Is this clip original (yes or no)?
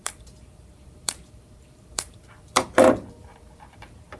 no